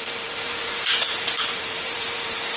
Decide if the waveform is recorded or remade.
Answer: remade